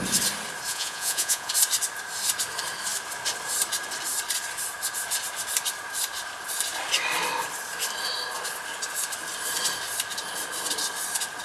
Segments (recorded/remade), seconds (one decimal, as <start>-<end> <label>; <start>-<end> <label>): 0.0-0.7 recorded; 0.7-1.5 remade; 1.5-11.4 recorded